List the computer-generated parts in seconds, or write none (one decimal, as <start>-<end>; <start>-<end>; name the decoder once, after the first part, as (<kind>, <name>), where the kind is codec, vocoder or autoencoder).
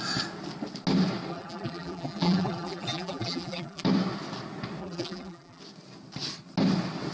1.3-3.8 (vocoder, BigVGAN v2); 4.8-5.6